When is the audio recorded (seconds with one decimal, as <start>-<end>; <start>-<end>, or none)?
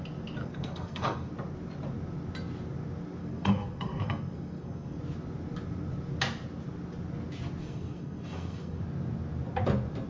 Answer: 0.0-0.4; 1.3-3.2; 5.0-7.6; 8.8-10.1